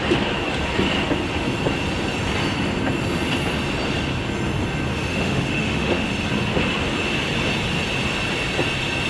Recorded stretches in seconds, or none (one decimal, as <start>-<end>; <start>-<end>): 0.0-4.9; 6.1-9.1